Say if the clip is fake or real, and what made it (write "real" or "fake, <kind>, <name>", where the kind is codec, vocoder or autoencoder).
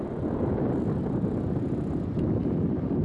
real